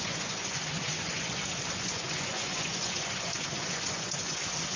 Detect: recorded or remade remade